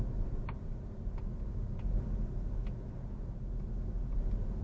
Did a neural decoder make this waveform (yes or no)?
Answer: no